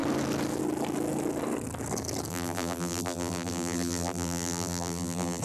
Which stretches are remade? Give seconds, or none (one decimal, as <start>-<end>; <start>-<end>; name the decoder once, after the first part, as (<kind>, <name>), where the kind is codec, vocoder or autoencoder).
2.3-5.4 (vocoder, BigVGAN v2)